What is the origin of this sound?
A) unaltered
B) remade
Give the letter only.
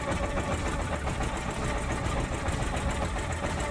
A